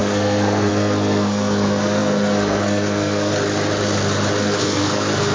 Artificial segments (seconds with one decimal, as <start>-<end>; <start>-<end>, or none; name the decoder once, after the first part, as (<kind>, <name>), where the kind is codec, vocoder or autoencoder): 0.0-3.3 (codec, SNAC); 4.4-5.3